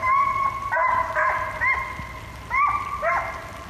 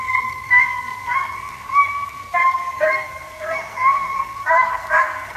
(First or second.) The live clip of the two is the first